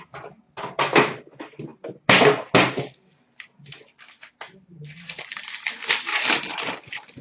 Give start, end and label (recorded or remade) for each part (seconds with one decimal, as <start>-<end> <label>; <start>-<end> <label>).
0.0-6.1 recorded; 6.1-6.7 remade; 6.7-7.2 recorded